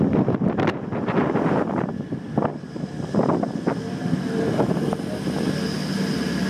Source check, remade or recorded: recorded